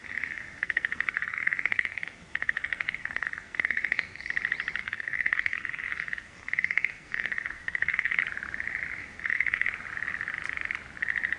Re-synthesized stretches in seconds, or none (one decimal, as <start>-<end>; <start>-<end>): 0.0-4.3; 4.8-8.2; 9.0-9.7